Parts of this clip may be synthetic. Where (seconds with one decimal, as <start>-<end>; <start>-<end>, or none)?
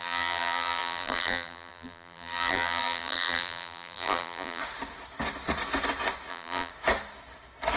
0.0-4.6; 6.3-6.7